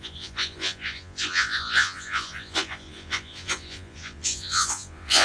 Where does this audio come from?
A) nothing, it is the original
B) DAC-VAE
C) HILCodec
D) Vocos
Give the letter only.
D